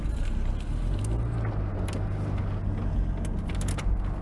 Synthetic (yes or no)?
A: no